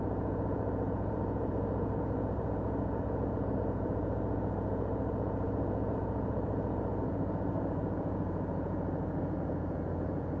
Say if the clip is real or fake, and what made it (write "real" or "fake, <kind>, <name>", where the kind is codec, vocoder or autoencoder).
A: fake, vocoder, Vocos